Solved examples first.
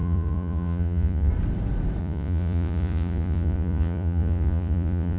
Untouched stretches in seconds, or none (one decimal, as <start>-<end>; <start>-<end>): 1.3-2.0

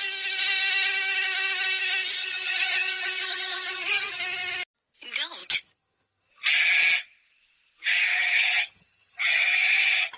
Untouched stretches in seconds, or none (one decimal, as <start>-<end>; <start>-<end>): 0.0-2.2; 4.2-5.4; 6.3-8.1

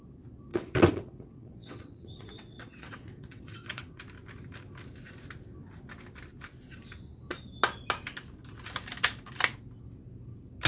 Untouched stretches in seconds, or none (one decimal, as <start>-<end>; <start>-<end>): 0.0-0.5; 4.0-10.7

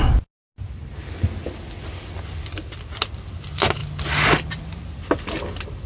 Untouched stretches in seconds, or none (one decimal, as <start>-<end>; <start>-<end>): 0.0-5.9

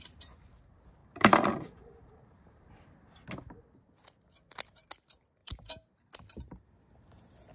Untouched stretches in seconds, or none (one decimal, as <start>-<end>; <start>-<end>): 0.0-1.0; 2.7-5.4; 6.1-7.5

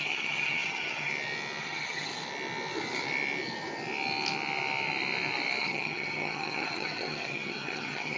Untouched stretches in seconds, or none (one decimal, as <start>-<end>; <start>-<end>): 1.1-1.6; 2.1-5.6

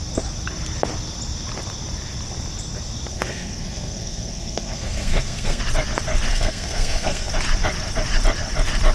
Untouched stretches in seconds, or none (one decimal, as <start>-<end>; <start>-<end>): 0.0-3.1; 5.6-6.3; 7.3-8.9

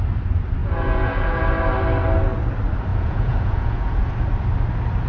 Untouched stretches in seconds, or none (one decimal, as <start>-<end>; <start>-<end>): 0.0-0.6; 1.4-2.9; 4.1-5.1